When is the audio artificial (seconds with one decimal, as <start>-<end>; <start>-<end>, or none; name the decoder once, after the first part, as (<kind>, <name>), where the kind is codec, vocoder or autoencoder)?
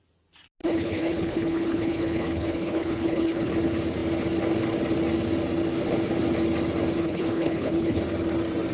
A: 0.6-3.5 (codec, HILCodec); 7.0-8.0